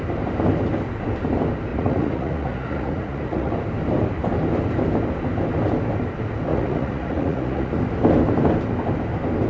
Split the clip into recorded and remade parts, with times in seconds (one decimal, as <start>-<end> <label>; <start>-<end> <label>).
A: 0.0-1.7 recorded; 1.7-3.5 remade; 3.5-6.5 recorded; 6.5-7.7 remade; 7.7-9.5 recorded